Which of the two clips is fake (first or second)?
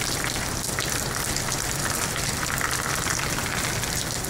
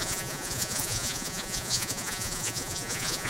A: second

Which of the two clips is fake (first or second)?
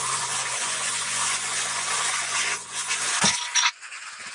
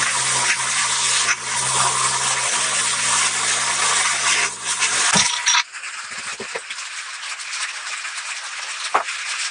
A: first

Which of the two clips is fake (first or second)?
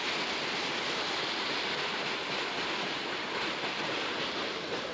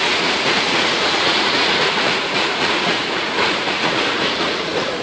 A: second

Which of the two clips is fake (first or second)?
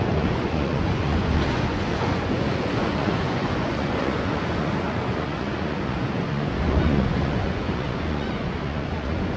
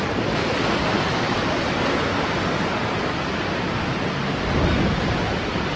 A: first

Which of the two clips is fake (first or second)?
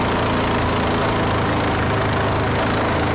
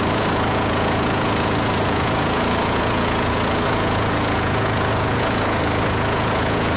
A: second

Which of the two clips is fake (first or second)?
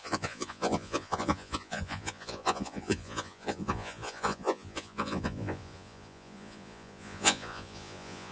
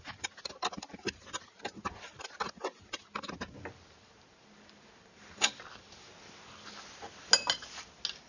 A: first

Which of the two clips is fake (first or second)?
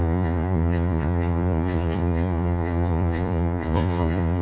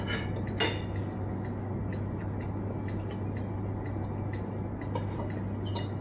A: first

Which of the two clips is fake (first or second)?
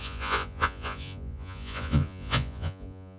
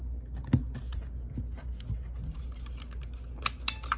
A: first